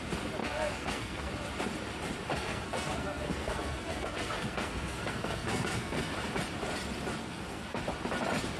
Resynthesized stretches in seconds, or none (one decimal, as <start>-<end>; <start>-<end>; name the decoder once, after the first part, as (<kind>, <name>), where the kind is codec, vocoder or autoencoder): 0.4-1.3 (codec, SNAC); 2.3-6.1; 7.2-7.8